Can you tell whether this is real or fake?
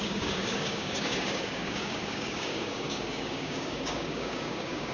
fake